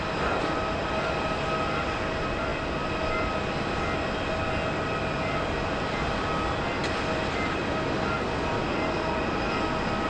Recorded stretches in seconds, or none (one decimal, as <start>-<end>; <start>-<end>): 0.0-10.1

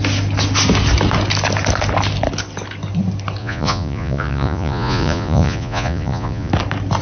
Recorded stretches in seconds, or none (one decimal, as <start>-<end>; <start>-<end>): 0.0-3.4; 6.5-7.0